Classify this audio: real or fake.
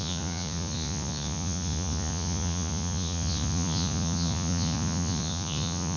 fake